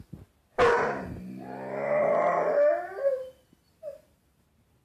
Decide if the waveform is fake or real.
real